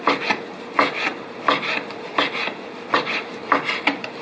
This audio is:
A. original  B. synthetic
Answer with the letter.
A